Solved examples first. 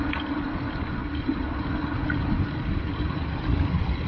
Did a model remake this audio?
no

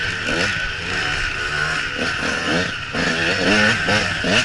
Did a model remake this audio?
no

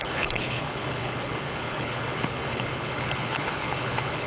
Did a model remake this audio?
yes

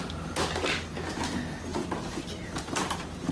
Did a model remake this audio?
no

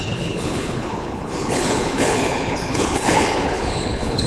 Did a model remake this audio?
yes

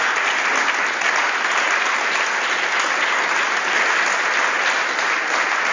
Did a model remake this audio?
no